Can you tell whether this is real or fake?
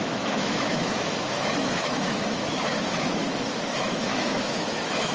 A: fake